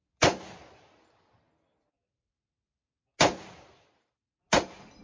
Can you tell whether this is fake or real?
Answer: real